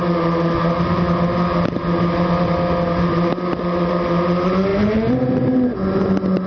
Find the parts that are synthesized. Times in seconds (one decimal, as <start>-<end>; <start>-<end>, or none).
4.7-5.3